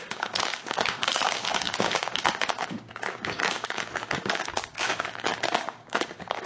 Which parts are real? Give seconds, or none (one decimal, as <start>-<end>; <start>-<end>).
none